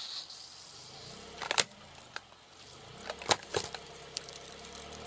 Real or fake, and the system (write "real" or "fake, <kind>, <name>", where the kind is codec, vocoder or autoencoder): real